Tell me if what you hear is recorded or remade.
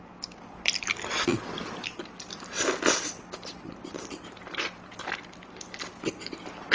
recorded